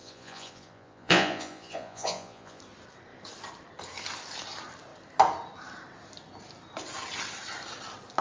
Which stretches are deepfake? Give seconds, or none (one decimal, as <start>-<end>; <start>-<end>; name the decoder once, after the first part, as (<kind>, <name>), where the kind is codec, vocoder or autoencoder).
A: 0.0-2.6 (vocoder, Vocos)